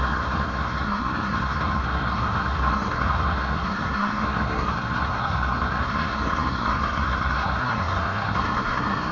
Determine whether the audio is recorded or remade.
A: remade